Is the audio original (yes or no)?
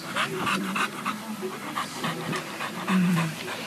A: no